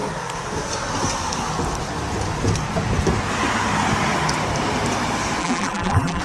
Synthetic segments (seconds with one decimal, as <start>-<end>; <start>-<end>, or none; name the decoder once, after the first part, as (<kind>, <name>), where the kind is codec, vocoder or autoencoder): 5.4-6.2 (vocoder, BigVGAN v2)